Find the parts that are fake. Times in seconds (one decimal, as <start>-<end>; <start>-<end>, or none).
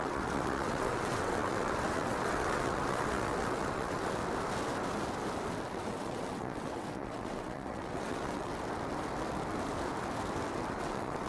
0.0-4.2; 5.7-8.5; 10.8-11.3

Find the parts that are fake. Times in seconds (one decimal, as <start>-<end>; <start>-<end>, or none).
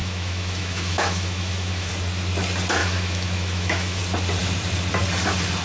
0.0-1.9; 2.8-4.0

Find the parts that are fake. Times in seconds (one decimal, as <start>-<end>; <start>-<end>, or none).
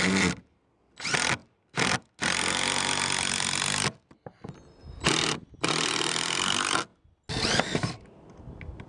none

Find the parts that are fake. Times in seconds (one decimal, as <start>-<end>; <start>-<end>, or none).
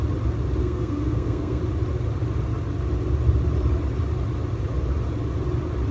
0.6-1.6